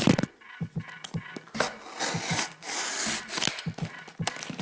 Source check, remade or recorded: recorded